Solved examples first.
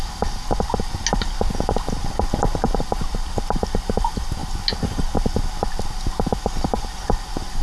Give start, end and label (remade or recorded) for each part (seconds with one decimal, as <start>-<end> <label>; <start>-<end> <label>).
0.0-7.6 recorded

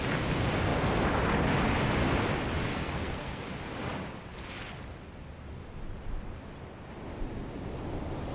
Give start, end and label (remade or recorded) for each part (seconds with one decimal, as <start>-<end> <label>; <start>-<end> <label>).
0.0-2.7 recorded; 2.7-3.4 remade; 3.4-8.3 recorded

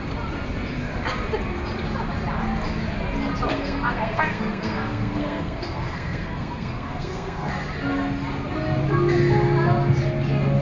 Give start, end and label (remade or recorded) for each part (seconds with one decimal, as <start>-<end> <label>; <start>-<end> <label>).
0.0-3.5 recorded; 3.5-7.5 remade; 7.5-10.6 recorded

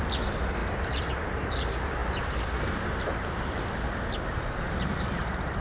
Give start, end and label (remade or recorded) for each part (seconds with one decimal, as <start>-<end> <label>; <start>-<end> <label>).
0.0-5.6 recorded

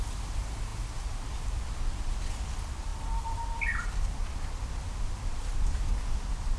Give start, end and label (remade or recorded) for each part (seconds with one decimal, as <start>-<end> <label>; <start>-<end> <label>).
0.0-6.6 recorded